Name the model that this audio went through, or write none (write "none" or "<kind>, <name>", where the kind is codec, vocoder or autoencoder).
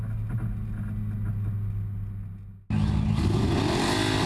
none